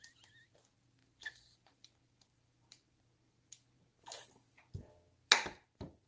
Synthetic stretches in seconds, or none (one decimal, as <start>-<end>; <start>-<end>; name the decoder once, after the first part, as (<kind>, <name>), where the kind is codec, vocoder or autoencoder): 1.0-4.7 (vocoder, BigVGAN v2)